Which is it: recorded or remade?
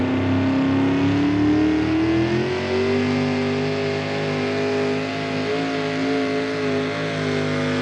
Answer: recorded